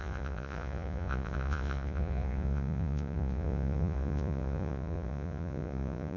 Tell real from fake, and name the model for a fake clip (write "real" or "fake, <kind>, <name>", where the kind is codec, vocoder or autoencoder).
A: fake, vocoder, Vocos